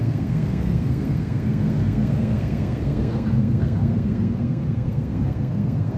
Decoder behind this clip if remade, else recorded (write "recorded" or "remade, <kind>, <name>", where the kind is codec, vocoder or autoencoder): remade, codec, SNAC